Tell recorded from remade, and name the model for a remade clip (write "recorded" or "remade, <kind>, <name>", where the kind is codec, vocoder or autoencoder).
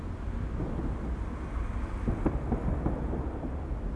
recorded